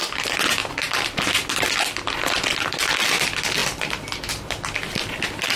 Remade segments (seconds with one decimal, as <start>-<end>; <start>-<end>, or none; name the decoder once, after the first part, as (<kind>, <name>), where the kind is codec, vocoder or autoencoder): none